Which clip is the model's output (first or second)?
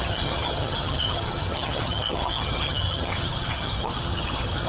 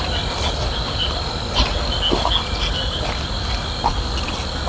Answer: first